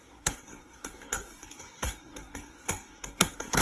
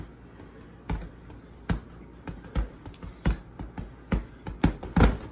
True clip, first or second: second